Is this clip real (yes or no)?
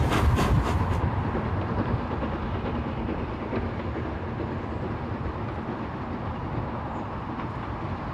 yes